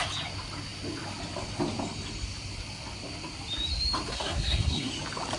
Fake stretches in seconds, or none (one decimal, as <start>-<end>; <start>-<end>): 4.1-4.9